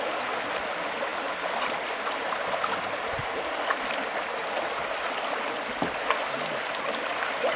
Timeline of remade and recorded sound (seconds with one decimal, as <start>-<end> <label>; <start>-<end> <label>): 0.0-7.6 recorded